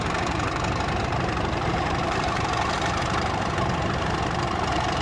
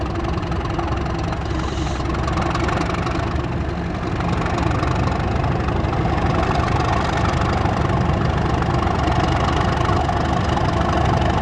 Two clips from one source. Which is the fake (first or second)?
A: first